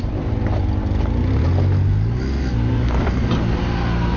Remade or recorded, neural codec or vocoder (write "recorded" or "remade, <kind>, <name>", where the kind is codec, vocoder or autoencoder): recorded